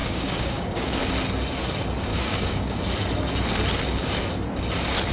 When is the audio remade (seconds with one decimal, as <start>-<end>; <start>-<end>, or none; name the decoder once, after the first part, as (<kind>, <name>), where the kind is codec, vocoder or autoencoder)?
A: 0.0-1.0 (codec, DAC); 2.1-2.8